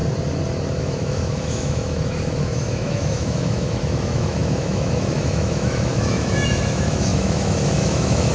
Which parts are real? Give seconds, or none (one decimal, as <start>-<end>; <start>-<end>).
0.0-0.8